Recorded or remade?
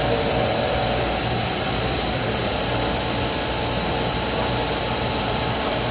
remade